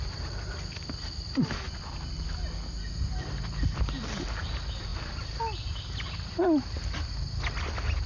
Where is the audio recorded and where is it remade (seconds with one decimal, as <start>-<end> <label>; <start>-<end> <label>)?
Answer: 0.0-8.1 recorded